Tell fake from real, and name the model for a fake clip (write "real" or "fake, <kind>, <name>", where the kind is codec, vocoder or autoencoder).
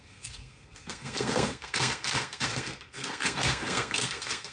fake, codec, SNAC